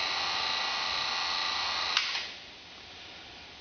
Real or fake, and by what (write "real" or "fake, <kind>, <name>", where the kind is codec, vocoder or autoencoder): real